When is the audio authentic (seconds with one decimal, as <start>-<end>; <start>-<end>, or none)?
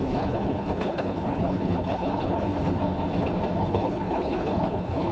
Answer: 2.5-3.6